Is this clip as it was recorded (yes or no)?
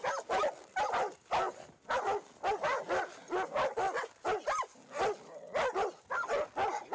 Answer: yes